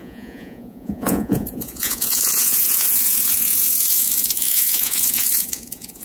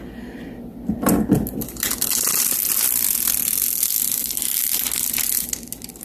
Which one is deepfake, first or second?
first